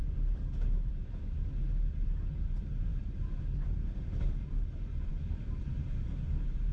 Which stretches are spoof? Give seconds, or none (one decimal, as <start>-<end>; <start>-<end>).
0.0-6.7